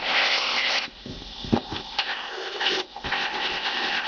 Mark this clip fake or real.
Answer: fake